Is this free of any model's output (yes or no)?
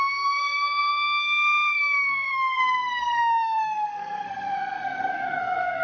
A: no